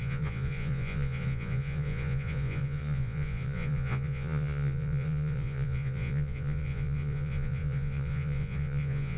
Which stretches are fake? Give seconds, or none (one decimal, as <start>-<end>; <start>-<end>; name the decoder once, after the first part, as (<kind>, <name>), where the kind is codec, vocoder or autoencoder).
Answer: 0.0-9.2 (vocoder, Vocos)

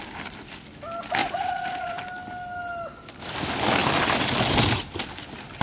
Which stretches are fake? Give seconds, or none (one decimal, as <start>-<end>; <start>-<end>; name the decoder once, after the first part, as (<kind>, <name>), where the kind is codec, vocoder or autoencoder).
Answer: 1.2-2.0 (vocoder, Vocos)